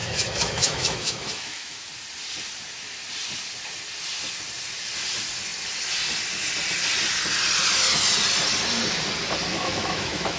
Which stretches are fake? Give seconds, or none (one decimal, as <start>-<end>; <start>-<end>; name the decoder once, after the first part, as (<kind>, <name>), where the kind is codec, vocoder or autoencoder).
0.0-1.9 (autoencoder, DAC-VAE); 9.5-10.4